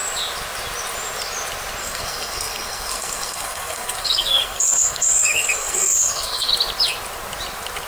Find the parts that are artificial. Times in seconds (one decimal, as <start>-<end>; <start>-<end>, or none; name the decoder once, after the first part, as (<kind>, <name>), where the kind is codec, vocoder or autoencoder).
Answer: 1.8-6.5 (codec, SNAC)